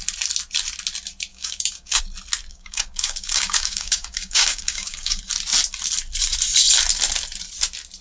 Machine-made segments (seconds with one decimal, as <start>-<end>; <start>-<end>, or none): 1.3-2.0; 2.5-5.2